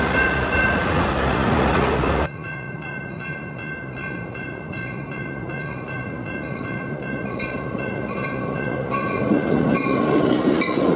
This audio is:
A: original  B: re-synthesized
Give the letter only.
B